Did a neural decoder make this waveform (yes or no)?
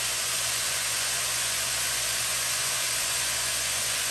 yes